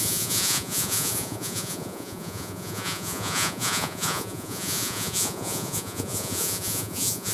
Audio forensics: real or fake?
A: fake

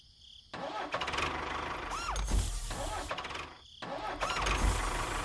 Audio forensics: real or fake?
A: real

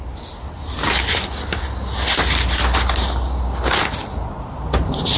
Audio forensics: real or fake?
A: real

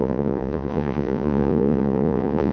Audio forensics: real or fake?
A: fake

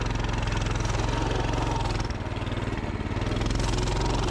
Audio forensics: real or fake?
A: real